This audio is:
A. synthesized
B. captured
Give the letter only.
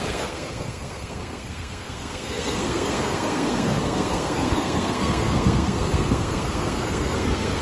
A